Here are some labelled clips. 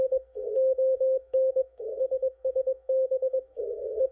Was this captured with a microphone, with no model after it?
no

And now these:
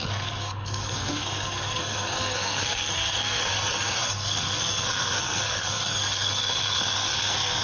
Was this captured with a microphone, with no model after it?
no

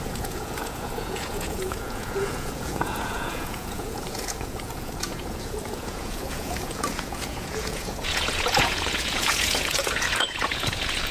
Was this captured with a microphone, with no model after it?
no